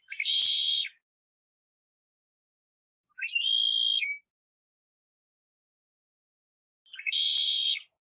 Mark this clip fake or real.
real